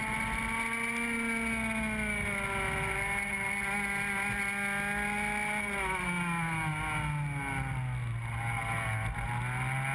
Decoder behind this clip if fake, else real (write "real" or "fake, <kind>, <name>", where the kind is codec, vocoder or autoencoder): real